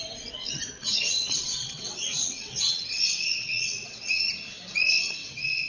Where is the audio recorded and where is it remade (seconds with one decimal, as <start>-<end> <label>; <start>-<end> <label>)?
0.0-0.8 recorded; 0.8-4.2 remade; 4.2-4.7 recorded; 4.7-5.7 remade